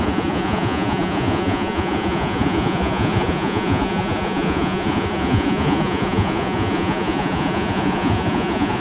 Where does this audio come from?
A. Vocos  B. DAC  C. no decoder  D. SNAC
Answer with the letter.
A